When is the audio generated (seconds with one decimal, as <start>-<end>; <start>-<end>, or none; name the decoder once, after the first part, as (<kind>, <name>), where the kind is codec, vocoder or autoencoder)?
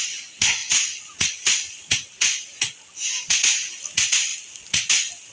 none